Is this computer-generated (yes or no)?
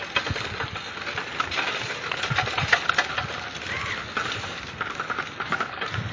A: no